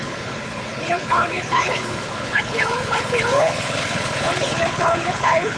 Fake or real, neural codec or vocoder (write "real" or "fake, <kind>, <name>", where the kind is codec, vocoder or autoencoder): fake, codec, HILCodec